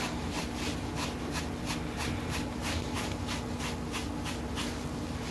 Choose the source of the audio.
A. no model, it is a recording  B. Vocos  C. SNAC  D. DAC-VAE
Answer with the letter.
A